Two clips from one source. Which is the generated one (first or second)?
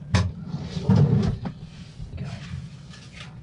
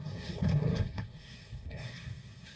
second